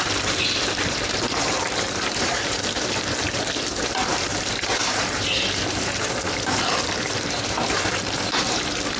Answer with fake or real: fake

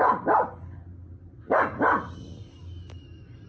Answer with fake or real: real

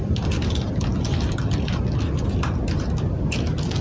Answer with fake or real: real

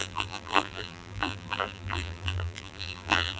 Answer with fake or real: fake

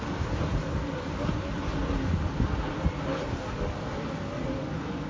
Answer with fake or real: real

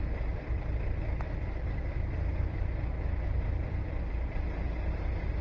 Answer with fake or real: fake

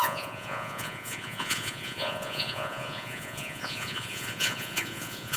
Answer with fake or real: fake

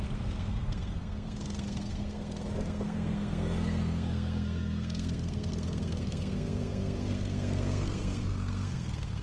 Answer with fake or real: fake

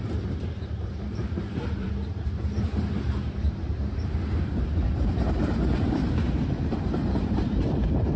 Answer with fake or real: fake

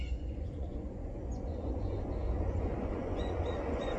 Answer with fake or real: fake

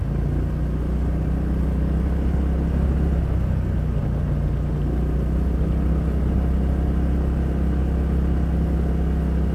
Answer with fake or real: real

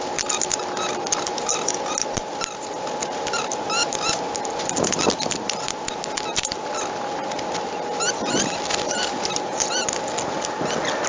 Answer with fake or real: real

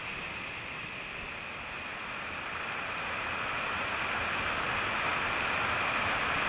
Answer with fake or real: real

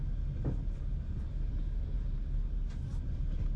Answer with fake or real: real